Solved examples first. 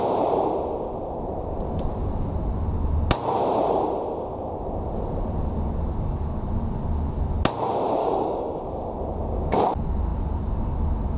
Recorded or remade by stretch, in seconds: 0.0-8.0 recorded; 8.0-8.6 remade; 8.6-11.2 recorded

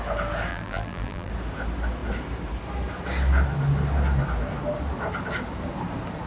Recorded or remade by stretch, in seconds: 0.0-0.5 recorded; 0.5-1.3 remade; 1.3-6.3 recorded

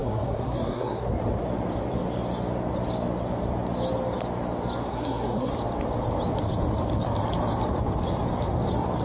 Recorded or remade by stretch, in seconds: 0.0-1.1 remade; 1.1-4.9 recorded; 4.9-5.5 remade; 5.5-9.0 recorded